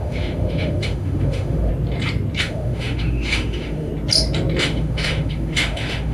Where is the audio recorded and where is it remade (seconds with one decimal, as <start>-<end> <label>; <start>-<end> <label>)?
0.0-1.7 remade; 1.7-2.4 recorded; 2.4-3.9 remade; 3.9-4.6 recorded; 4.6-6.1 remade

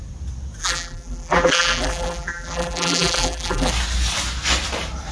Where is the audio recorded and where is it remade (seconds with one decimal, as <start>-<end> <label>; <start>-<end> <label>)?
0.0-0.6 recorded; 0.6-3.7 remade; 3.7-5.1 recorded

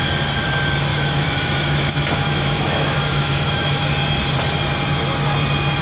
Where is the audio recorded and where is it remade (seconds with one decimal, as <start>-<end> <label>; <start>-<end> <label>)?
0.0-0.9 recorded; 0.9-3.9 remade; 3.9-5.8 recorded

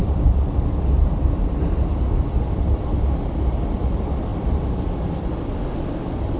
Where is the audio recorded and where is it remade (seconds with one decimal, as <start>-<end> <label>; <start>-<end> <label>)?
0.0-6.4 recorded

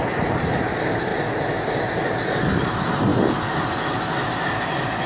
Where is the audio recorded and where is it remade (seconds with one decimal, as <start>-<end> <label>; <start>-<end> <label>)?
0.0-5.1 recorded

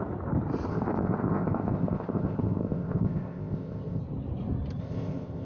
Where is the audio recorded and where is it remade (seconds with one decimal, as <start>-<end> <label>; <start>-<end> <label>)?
0.0-0.7 recorded; 0.7-4.0 remade; 4.0-4.8 recorded; 4.8-5.5 remade